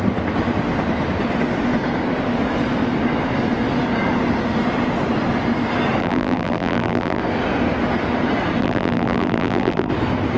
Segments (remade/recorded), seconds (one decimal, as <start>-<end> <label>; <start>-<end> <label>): 0.0-6.0 recorded; 6.0-7.2 remade; 7.2-8.6 recorded; 8.6-9.9 remade; 9.9-10.4 recorded